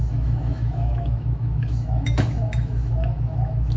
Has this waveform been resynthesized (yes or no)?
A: yes